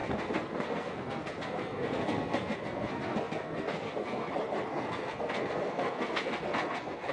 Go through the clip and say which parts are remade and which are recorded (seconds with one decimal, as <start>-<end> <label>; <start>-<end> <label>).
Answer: 0.0-4.3 remade; 4.3-4.7 recorded; 4.7-7.1 remade